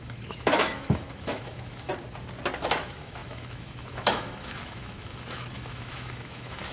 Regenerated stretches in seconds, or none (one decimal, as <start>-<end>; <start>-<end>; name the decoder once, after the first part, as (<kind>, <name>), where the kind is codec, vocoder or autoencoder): 0.0-1.9 (autoencoder, DAC-VAE); 2.8-6.7